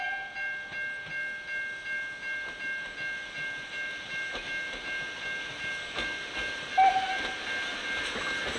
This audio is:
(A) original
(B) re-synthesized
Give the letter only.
A